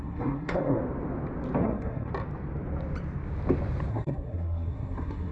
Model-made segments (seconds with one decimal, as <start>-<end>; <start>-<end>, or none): 0.0-0.8; 1.6-2.1; 3.9-5.3